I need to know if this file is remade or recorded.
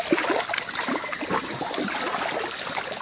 recorded